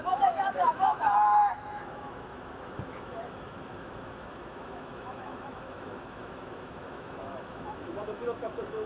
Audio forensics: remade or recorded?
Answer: remade